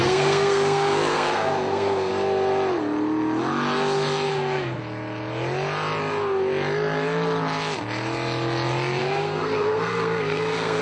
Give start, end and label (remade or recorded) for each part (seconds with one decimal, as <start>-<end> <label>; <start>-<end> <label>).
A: 0.0-2.1 remade; 2.1-4.3 recorded; 4.3-4.8 remade; 4.8-9.0 recorded; 9.0-10.8 remade